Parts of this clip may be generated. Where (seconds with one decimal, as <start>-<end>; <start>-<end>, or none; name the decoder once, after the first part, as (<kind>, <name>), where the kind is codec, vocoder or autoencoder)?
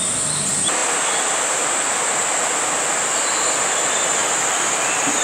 none